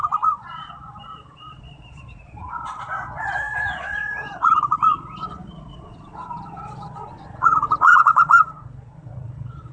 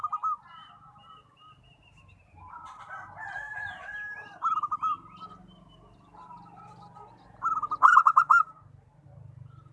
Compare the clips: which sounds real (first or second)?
second